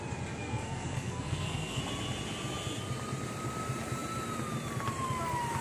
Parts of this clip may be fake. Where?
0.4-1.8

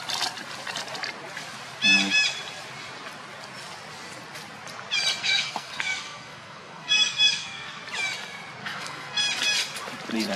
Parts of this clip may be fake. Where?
5.2-7.8; 8.6-9.2

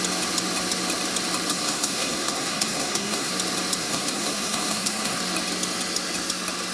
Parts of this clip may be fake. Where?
1.5-3.3; 3.8-5.2

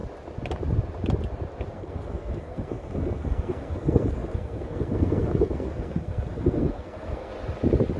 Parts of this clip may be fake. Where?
1.7-7.3

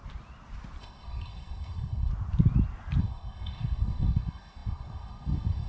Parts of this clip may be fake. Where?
0.8-2.1; 3.0-5.7